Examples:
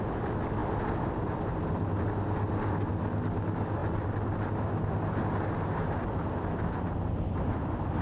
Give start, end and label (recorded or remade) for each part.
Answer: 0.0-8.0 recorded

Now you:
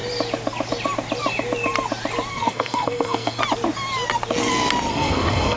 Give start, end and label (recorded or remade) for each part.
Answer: 0.0-2.3 recorded; 2.3-3.4 remade; 3.4-4.9 recorded; 4.9-5.6 remade

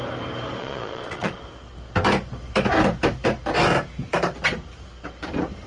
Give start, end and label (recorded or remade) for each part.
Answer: 0.0-0.6 recorded; 0.6-1.4 remade; 1.4-5.7 recorded

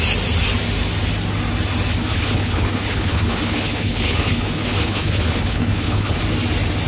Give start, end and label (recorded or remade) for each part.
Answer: 0.0-2.1 recorded; 2.1-6.2 remade; 6.2-6.9 recorded

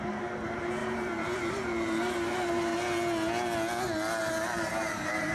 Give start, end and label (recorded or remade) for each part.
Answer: 0.0-2.7 remade; 2.7-4.2 recorded; 4.2-5.3 remade

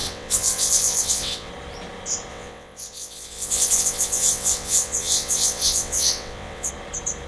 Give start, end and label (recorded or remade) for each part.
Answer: 0.0-1.5 remade; 1.5-2.3 recorded; 2.3-6.7 remade; 6.7-7.3 recorded

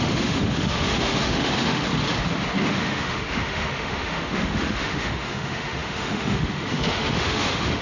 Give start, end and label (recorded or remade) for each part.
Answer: 0.0-1.8 remade; 1.8-2.7 recorded; 2.7-7.8 remade